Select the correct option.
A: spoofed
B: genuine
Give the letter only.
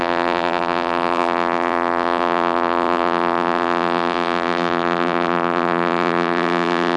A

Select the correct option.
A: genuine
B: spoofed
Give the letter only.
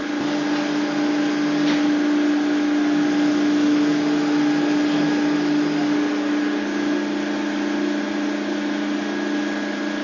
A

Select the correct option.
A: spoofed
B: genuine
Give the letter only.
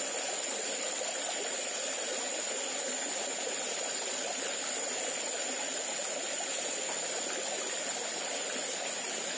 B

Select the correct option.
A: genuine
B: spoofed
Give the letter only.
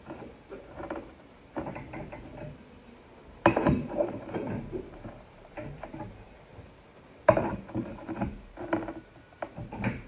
B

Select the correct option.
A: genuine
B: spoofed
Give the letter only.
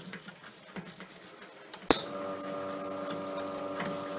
A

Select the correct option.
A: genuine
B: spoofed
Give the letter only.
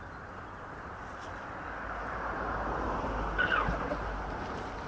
A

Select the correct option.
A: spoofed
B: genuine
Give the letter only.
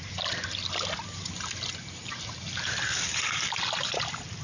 B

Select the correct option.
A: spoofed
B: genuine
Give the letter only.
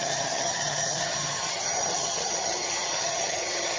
A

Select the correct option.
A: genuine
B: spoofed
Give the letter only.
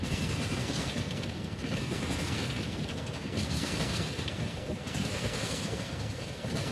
B